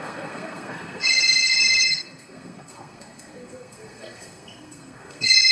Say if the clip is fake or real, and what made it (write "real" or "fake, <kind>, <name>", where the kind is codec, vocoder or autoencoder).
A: fake, codec, SNAC